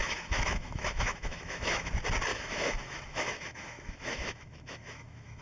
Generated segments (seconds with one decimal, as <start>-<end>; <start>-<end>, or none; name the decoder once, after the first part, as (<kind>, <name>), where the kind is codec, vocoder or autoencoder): 0.0-1.9 (autoencoder, DAC-VAE); 2.3-5.4

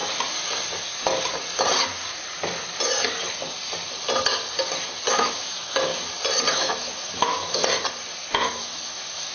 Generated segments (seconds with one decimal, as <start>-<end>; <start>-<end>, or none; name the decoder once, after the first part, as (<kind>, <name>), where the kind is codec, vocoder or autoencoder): 5.1-5.9 (autoencoder, DAC-VAE); 6.5-7.6; 8.5-9.3

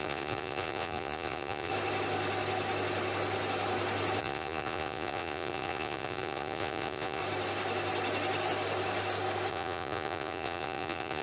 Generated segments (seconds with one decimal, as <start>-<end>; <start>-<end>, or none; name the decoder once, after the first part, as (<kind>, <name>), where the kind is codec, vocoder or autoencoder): 0.0-1.7 (vocoder, Vocos); 4.2-7.2; 9.5-11.2

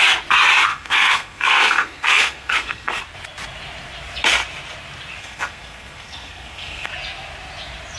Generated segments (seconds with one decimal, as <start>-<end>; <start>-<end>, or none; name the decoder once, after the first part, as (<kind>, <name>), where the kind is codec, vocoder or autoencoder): 0.7-3.0 (codec, SNAC); 5.2-6.9

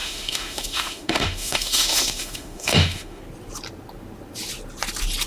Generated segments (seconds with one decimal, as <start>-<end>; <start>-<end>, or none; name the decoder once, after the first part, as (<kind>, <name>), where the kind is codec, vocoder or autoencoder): 0.0-3.2 (autoencoder, DAC-VAE)

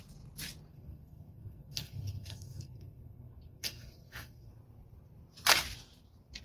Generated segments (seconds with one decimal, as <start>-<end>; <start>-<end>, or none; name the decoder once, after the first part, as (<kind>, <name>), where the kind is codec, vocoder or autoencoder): 0.7-4.5 (codec, SNAC)